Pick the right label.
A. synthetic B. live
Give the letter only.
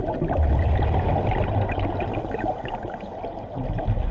B